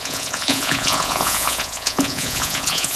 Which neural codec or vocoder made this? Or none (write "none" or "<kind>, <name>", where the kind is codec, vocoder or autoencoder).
vocoder, Vocos